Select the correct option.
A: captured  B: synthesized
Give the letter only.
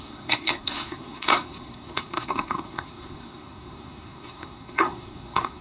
B